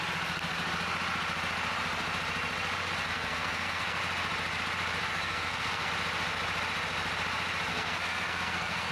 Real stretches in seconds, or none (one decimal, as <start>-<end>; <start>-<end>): 0.0-3.1; 4.0-5.1; 5.9-7.7